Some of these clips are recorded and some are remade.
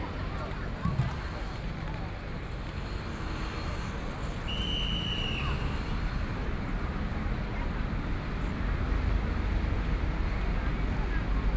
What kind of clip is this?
recorded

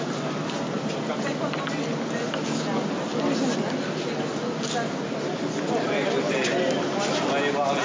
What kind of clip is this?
recorded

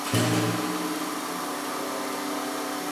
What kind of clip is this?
recorded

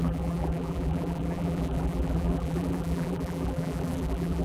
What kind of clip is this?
remade